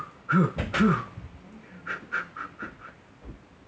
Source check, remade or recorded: recorded